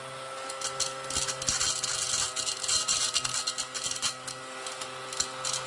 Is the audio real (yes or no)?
yes